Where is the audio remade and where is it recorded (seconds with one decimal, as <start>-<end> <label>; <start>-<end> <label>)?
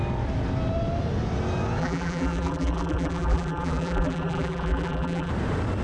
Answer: 0.0-1.8 recorded; 1.8-5.3 remade; 5.3-5.8 recorded